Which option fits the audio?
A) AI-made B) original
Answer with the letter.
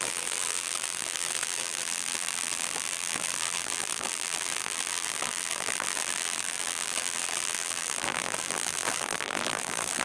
A